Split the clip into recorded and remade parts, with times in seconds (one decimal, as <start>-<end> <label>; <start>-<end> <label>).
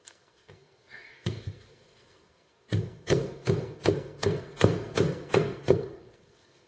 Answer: 0.0-6.7 remade